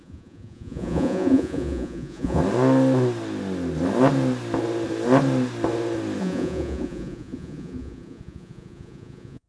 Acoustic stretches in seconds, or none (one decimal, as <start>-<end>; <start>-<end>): 2.4-6.2

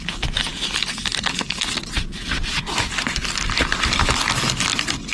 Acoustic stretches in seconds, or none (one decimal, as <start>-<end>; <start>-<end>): 0.0-5.1

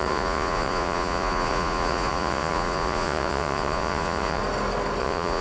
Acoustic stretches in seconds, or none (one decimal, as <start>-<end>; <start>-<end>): 4.4-5.0

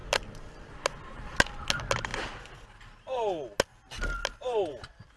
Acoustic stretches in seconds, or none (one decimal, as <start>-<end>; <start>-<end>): 0.0-5.2

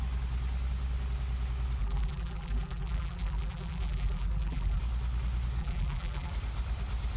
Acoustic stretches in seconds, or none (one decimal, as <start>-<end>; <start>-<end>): 0.0-1.8; 4.8-5.6; 6.3-7.2

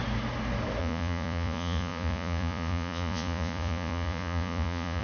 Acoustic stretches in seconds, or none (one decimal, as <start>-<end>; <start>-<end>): 0.0-0.8

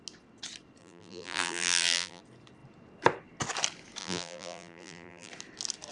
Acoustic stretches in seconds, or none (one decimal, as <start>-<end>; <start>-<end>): 0.0-0.8; 2.2-4.0; 5.3-5.9

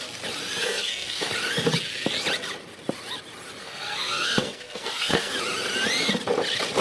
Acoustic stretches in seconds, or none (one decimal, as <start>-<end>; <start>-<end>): 0.0-0.6; 1.3-3.6; 5.3-6.8